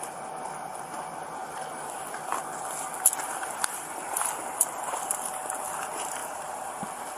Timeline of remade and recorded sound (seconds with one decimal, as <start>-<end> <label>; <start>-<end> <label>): 0.0-7.2 recorded